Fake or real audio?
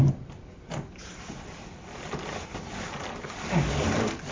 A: real